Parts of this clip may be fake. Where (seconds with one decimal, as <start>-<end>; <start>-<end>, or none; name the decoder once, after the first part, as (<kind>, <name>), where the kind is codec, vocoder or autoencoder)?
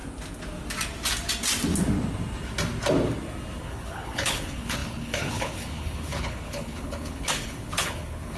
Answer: 3.6-8.4 (codec, HILCodec)